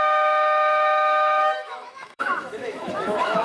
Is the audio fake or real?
fake